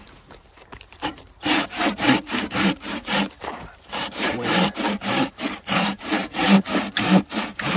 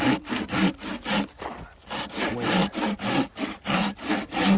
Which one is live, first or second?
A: second